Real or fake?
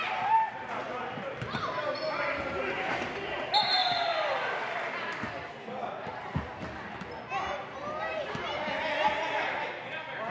real